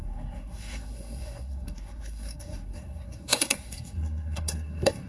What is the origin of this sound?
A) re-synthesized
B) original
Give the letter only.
A